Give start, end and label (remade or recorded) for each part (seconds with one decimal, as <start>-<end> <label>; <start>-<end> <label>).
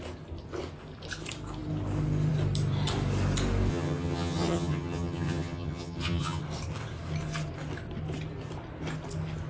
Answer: 0.0-3.7 recorded; 3.7-6.4 remade; 6.4-9.5 recorded